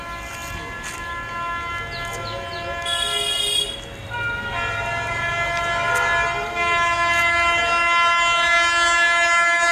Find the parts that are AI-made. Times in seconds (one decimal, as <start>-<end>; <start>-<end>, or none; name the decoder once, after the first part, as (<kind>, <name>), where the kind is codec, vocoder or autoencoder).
none